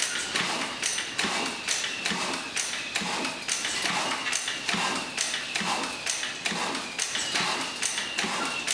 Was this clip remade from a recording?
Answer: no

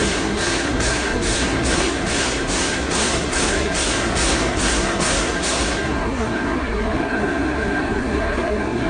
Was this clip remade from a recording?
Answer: yes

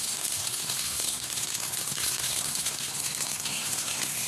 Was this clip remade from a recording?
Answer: yes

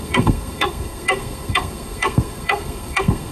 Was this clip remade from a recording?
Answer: yes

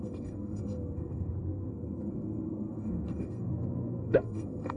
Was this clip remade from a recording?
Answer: yes